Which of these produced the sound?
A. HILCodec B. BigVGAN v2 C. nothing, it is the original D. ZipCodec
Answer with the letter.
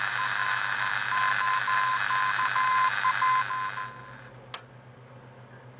C